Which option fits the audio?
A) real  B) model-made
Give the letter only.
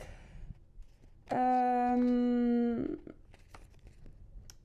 A